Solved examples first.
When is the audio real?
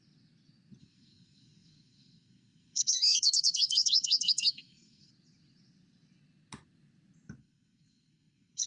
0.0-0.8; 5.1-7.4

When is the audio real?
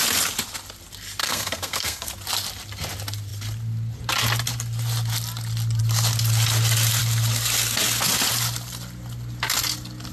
0.0-1.2; 2.1-10.1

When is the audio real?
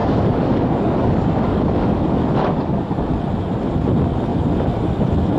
3.0-5.4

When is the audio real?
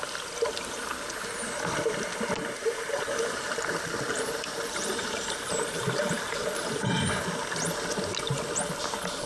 0.0-2.6; 7.0-9.3